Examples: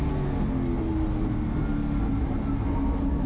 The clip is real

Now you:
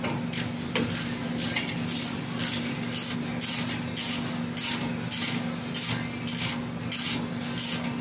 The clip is real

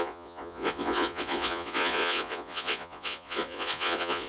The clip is fake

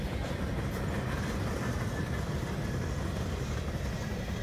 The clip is real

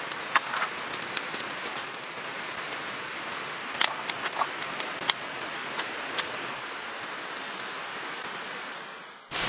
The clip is real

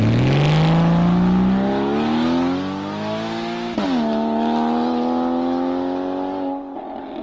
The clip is real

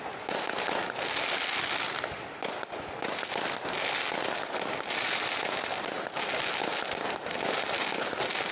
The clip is real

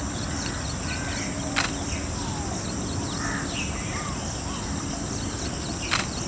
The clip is real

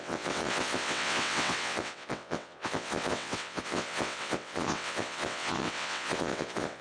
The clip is fake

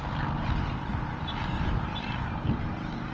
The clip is fake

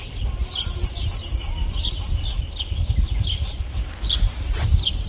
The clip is real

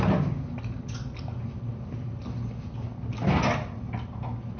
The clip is real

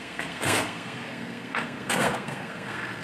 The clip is fake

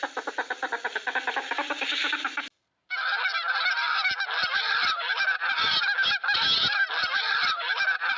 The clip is real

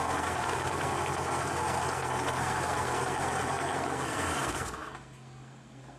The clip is fake